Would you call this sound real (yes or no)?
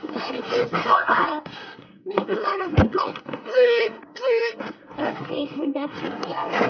no